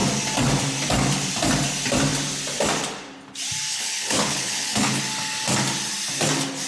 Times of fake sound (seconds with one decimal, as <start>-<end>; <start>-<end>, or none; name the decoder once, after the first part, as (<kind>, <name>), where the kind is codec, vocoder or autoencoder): 3.7-5.0 (codec, HILCodec)